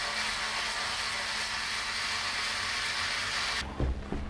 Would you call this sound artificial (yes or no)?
no